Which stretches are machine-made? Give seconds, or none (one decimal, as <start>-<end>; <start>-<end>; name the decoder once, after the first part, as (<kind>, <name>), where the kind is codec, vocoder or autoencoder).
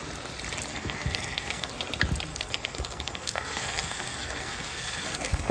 0.7-1.7 (codec, SNAC); 2.3-5.5